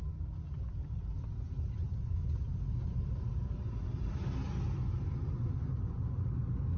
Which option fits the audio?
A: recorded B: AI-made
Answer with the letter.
A